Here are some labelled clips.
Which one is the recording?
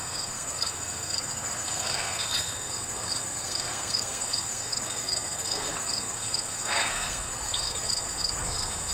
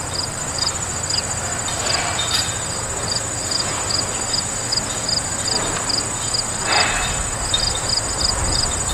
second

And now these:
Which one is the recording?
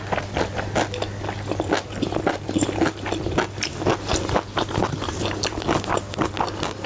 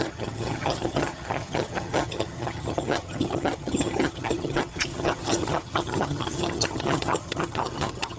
first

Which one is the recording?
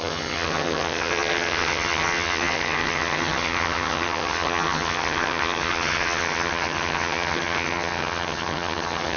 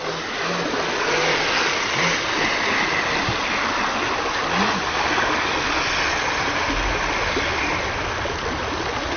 second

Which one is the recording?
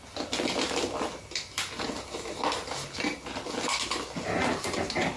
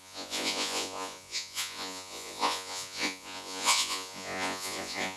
first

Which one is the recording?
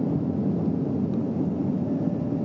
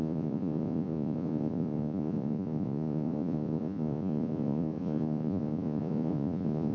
first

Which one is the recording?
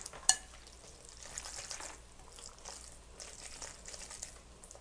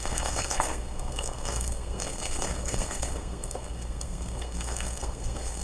first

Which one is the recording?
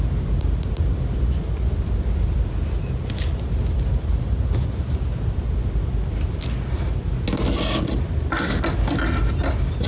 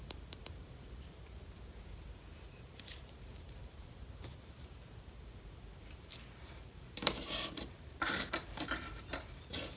first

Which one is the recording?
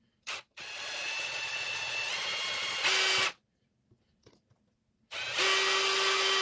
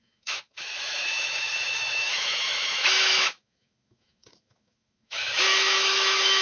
first